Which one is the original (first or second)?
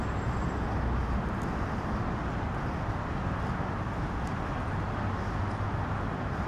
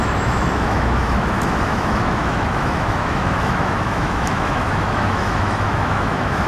first